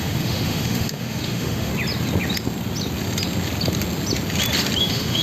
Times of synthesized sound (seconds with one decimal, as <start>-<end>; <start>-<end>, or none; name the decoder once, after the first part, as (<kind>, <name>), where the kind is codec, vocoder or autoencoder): 0.0-1.7 (autoencoder, DAC-VAE); 4.8-5.2